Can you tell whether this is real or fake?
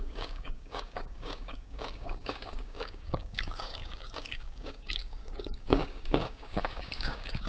fake